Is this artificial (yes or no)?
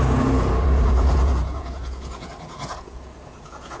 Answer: yes